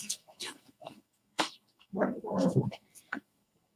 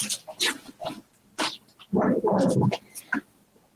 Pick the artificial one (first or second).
first